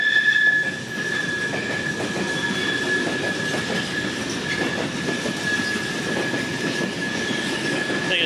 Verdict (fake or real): real